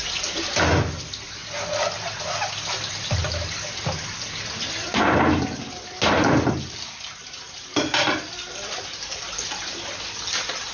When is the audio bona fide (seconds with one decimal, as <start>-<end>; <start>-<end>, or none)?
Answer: 0.0-10.7